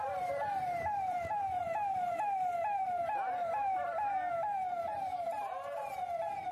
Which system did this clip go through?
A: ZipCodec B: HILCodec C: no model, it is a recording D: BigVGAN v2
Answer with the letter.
D